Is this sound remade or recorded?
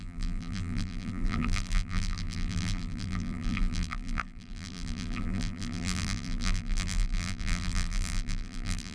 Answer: remade